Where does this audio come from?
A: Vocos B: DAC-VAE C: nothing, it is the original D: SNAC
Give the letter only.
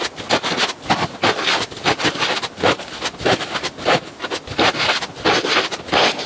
C